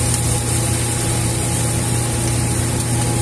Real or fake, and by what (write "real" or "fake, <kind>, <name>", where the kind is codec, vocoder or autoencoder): real